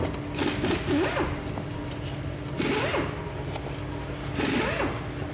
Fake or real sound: real